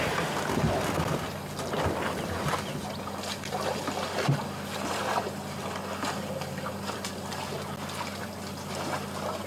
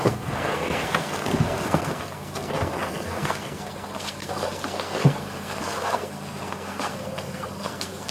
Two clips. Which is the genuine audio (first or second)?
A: first